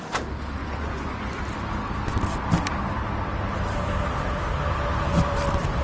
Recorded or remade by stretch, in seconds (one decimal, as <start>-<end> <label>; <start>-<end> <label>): 0.0-0.6 recorded; 0.6-1.4 remade; 1.4-5.8 recorded